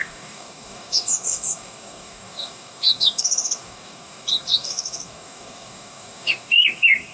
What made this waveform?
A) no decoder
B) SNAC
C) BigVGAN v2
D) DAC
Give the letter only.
D